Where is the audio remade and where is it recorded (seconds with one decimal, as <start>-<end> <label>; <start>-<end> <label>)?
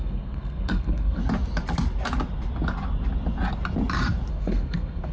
0.0-1.2 remade; 1.2-4.3 recorded; 4.3-5.1 remade